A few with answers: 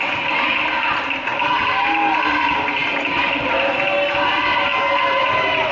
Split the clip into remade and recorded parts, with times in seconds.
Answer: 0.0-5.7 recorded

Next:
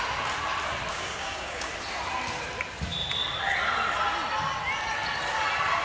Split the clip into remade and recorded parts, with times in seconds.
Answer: 0.0-0.9 recorded; 0.9-1.7 remade; 1.7-5.8 recorded

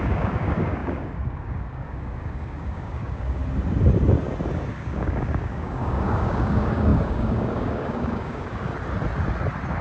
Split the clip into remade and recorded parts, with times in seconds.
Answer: 0.0-3.4 remade; 3.4-4.7 recorded; 4.7-8.7 remade; 8.7-9.8 recorded

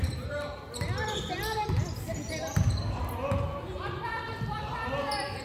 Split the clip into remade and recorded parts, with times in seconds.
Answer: 0.0-5.4 recorded